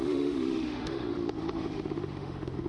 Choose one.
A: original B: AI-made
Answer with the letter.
B